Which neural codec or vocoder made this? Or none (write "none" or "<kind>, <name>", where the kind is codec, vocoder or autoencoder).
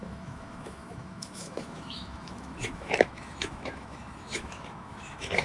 autoencoder, DAC-VAE